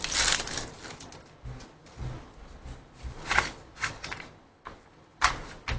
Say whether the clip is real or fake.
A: real